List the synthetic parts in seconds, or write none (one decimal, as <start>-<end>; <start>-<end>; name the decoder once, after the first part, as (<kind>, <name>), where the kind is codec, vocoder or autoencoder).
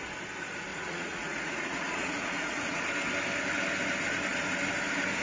0.7-2.8 (vocoder, Vocos)